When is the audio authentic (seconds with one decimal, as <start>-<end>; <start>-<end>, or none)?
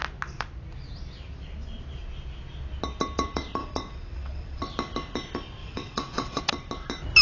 0.0-3.6; 4.6-5.6; 6.4-7.2